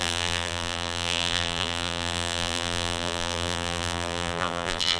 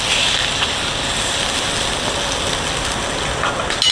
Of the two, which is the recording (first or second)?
second